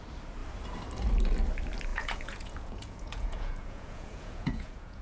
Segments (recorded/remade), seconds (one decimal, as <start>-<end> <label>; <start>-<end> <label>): 0.0-1.9 recorded; 1.9-5.0 remade